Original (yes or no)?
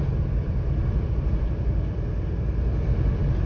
yes